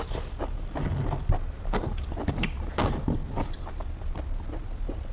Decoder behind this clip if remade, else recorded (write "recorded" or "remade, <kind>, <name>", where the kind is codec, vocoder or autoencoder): recorded